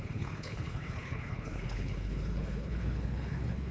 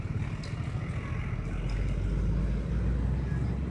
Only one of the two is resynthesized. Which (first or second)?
first